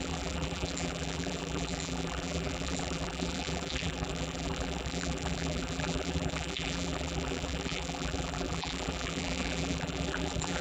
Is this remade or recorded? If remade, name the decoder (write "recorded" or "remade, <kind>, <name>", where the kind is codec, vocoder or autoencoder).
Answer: remade, vocoder, BigVGAN v2